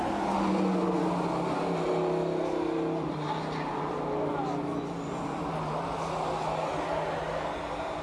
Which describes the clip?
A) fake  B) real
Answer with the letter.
B